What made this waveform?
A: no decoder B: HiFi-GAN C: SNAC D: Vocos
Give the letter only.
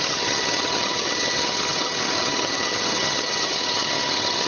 B